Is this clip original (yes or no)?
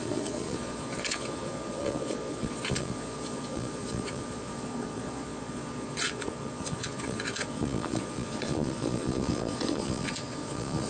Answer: no